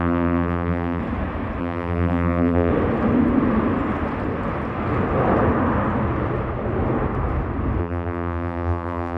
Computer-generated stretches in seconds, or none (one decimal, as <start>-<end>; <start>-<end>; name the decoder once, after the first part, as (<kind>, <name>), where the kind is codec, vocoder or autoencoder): 0.0-1.0 (vocoder, BigVGAN v2); 1.6-2.7; 7.8-9.2